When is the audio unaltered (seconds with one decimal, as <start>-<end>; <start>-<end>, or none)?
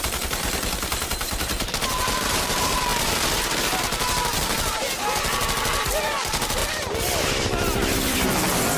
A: 2.9-5.8; 6.6-8.8